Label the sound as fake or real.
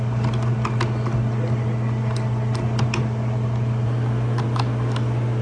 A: real